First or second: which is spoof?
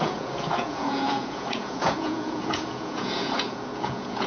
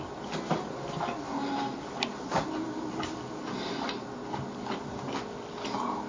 first